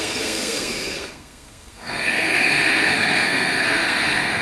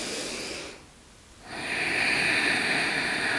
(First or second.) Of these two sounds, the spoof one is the first